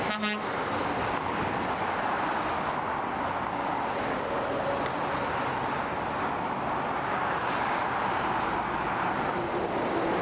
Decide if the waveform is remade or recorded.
recorded